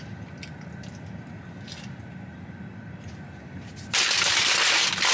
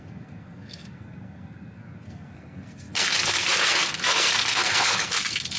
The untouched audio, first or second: first